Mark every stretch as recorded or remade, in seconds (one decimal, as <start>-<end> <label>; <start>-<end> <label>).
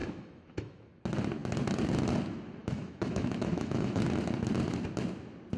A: 0.0-1.0 remade; 1.0-2.6 recorded; 2.6-4.0 remade; 4.0-5.6 recorded